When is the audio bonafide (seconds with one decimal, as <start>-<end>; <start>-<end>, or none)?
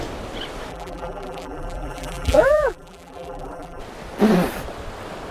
0.0-0.7; 3.8-5.3